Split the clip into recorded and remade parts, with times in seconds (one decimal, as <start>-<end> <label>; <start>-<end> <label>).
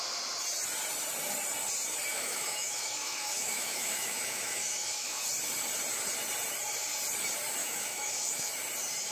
0.0-2.1 recorded; 2.1-5.2 remade; 5.2-7.6 recorded; 7.6-8.5 remade; 8.5-9.1 recorded